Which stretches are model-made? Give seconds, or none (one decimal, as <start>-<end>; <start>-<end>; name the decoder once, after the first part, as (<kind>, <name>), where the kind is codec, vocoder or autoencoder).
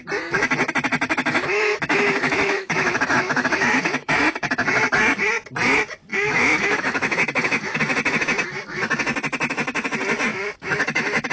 0.9-4.2 (autoencoder, DAC-VAE); 6.1-7.8; 10.3-11.3